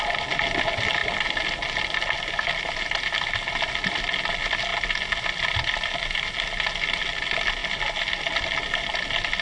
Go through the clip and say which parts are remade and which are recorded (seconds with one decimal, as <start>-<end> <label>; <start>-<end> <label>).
0.0-9.4 recorded